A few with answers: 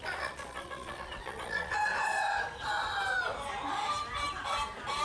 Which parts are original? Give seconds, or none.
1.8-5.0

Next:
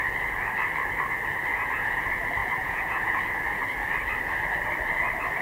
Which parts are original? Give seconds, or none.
0.0-1.5; 2.0-2.4; 3.2-5.4

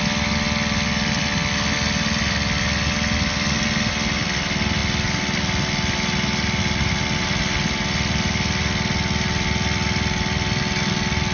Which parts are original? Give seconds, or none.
0.0-11.3

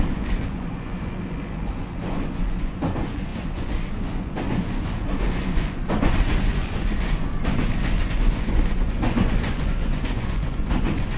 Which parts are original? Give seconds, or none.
none

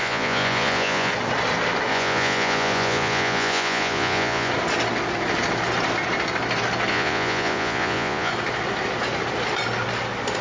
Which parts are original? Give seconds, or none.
1.1-1.9; 4.5-6.9; 8.3-10.4